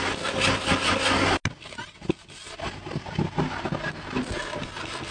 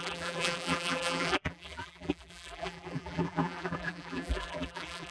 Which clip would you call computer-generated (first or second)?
second